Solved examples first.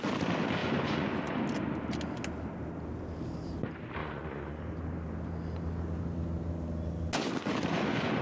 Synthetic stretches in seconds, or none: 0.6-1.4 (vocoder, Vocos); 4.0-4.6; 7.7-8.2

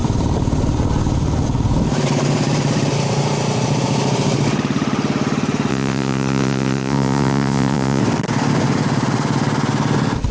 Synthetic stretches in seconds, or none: 5.7-8.0 (vocoder, Vocos)

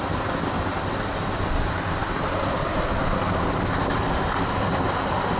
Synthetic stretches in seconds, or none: none